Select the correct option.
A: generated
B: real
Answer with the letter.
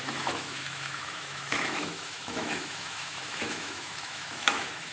A